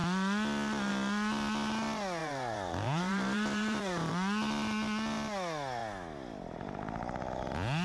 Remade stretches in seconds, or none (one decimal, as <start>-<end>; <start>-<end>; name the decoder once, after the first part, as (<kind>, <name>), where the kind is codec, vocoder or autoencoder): 2.2-4.1 (vocoder, BigVGAN v2)